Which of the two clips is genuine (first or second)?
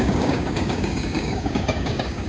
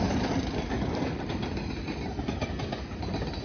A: second